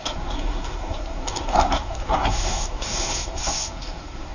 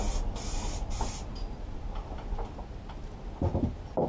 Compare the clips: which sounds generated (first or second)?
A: first